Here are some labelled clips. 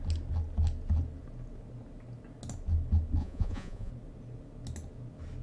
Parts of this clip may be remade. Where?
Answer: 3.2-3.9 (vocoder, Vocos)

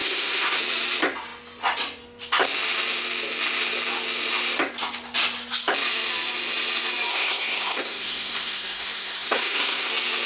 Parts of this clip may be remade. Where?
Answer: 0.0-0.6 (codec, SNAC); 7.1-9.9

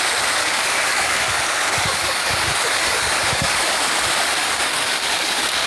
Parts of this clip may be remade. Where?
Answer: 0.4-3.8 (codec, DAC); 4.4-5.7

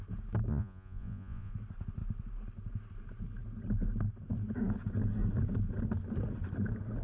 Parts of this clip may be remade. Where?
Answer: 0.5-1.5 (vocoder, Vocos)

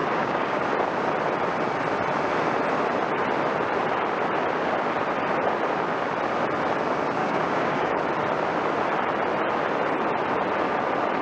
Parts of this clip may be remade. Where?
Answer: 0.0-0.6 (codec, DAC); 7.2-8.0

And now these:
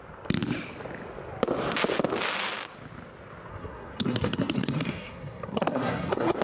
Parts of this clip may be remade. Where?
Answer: 3.5-6.4 (codec, SNAC)